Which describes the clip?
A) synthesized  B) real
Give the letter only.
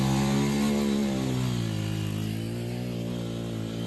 B